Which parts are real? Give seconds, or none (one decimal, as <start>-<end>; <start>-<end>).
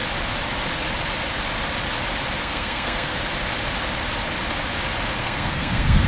0.0-2.4; 3.2-5.2